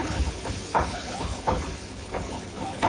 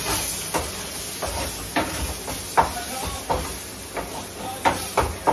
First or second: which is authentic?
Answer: second